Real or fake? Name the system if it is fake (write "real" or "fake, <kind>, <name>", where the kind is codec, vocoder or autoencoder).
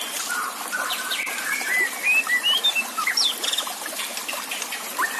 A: real